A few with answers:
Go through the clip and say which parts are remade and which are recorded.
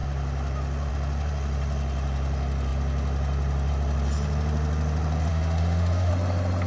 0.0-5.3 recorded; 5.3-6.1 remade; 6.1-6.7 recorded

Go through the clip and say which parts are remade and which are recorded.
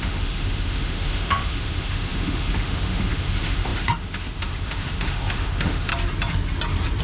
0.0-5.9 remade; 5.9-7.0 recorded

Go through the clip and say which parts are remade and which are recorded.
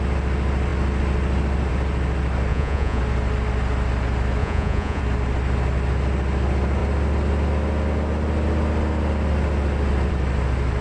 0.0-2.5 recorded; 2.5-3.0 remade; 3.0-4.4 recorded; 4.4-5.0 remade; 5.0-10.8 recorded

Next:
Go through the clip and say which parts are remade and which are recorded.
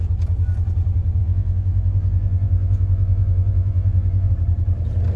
0.0-1.2 recorded; 1.2-4.3 remade; 4.3-5.2 recorded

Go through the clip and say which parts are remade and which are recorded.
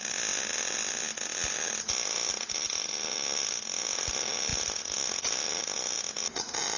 0.0-6.8 recorded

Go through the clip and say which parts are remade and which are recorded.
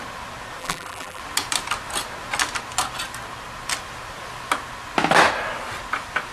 0.0-0.6 recorded; 0.6-1.2 remade; 1.2-6.3 recorded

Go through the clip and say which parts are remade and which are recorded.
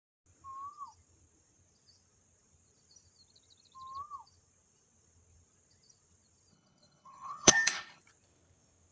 0.0-6.5 recorded; 6.5-8.0 remade; 8.0-8.9 recorded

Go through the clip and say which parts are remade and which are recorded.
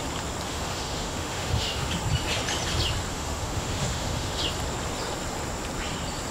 0.0-0.5 recorded; 0.5-1.9 remade; 1.9-3.1 recorded; 3.1-4.4 remade; 4.4-6.3 recorded